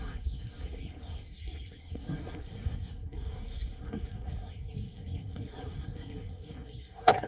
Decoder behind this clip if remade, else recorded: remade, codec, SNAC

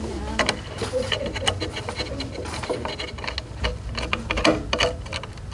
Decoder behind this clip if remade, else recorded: recorded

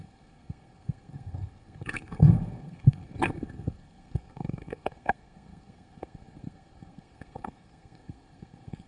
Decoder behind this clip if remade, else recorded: remade, codec, SNAC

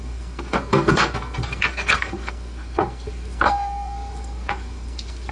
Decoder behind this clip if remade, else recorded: remade, codec, SNAC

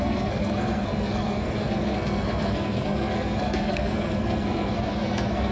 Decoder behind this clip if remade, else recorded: remade, codec, SNAC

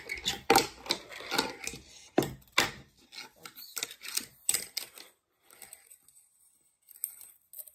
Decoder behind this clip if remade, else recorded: recorded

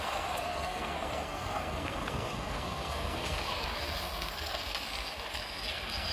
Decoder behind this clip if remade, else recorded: remade, codec, SNAC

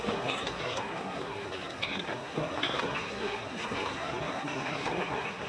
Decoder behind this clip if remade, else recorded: remade, codec, SNAC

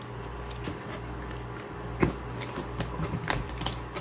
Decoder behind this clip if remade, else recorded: recorded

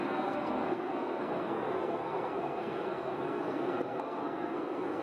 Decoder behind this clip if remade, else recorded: remade, codec, SNAC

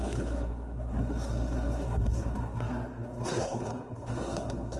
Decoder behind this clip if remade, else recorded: remade, codec, SNAC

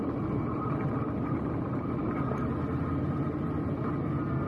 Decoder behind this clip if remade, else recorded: recorded